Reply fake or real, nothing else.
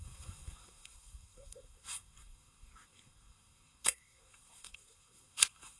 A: fake